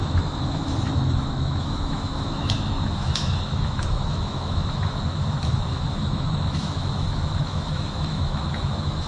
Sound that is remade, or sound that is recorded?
remade